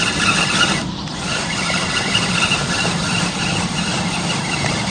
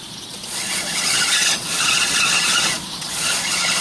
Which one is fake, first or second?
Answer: second